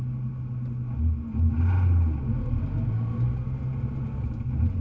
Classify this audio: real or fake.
real